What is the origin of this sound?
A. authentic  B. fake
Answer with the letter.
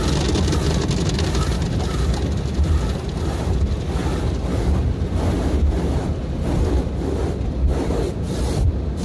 A